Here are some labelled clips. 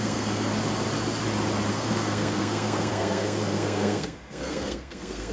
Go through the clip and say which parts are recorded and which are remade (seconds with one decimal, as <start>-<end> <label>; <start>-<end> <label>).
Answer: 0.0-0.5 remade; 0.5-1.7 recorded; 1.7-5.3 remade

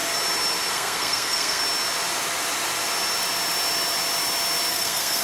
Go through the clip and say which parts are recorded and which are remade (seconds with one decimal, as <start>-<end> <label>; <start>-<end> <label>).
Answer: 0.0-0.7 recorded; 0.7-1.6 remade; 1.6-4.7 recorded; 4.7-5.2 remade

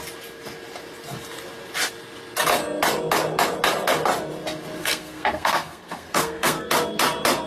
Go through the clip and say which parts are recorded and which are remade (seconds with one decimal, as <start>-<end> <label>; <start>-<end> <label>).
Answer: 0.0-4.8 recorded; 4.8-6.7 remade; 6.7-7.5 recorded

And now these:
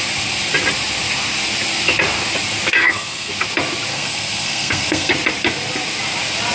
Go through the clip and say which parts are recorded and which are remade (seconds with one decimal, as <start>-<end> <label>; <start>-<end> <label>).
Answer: 0.0-2.8 recorded; 2.8-3.3 remade; 3.3-3.9 recorded; 3.9-5.1 remade; 5.1-6.5 recorded